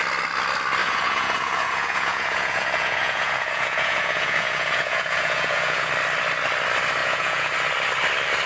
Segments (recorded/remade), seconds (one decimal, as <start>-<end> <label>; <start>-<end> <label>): 0.0-0.8 recorded; 0.8-5.9 remade; 5.9-7.0 recorded; 7.0-7.5 remade; 7.5-8.5 recorded

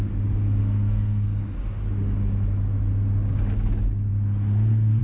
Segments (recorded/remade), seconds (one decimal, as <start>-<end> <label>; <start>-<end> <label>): 0.0-0.6 recorded; 0.6-1.4 remade; 1.4-5.0 recorded

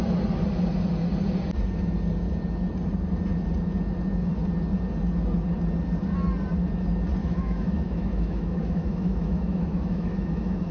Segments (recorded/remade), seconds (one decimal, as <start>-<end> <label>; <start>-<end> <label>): 0.0-7.2 recorded; 7.2-10.7 remade

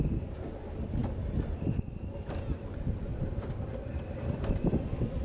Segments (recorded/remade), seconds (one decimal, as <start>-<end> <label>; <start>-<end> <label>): 0.0-5.2 recorded

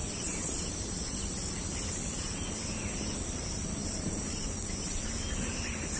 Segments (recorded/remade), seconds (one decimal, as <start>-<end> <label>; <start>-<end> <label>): 0.0-1.6 remade; 1.6-3.8 recorded; 3.8-5.0 remade; 5.0-6.0 recorded

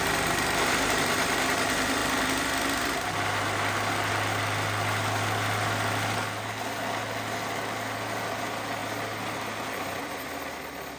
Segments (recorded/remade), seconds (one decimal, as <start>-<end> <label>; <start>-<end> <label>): 0.0-11.0 recorded

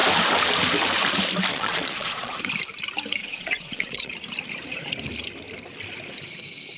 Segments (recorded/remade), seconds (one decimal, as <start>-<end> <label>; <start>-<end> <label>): 0.0-1.5 recorded; 1.5-2.4 remade; 2.4-3.2 recorded; 3.2-4.1 remade; 4.1-6.8 recorded